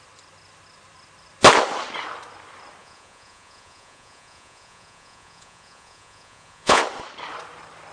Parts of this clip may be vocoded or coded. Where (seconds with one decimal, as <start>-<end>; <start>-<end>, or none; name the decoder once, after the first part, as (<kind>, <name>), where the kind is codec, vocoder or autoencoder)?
2.8-6.8 (vocoder, Vocos)